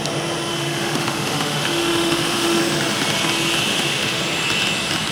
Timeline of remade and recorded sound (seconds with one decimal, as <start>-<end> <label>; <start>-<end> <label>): 0.0-0.5 recorded; 0.5-2.6 remade; 2.6-3.7 recorded; 3.7-4.2 remade; 4.2-5.1 recorded